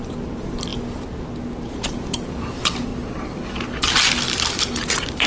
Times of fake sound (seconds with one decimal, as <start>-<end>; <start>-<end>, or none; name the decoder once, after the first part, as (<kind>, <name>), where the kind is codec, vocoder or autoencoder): none